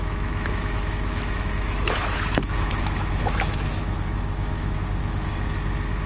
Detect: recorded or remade remade